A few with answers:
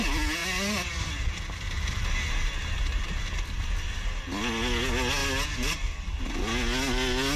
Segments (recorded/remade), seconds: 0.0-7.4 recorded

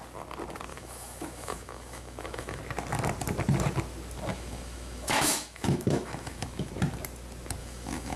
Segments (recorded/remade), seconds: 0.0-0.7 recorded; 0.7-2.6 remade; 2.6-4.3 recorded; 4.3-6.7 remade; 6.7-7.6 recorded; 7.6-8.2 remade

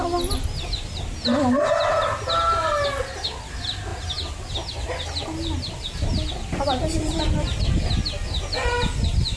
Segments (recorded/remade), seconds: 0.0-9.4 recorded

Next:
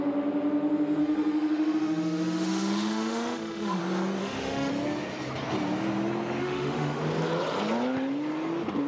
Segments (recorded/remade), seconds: 0.0-1.0 recorded; 1.0-3.8 remade; 3.8-4.2 recorded; 4.2-4.7 remade; 4.7-6.4 recorded; 6.4-7.0 remade; 7.0-8.9 recorded